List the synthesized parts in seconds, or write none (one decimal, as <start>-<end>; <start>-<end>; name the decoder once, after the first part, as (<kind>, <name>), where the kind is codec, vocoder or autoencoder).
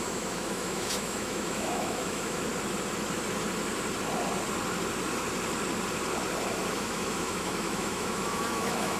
0.0-2.5 (autoencoder, DAC-VAE); 6.7-9.0